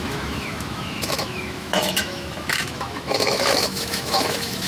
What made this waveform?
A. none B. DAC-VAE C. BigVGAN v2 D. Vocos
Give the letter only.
B